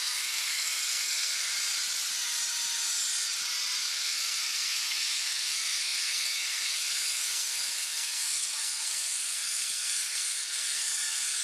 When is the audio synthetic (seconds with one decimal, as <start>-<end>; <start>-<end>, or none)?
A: 0.0-1.5; 3.8-11.4